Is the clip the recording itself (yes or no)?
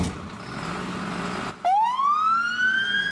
yes